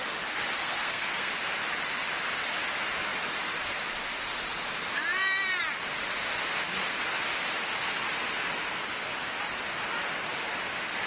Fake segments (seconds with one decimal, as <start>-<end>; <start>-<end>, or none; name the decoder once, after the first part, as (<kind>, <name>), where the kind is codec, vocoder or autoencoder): 0.6-1.3 (codec, SNAC)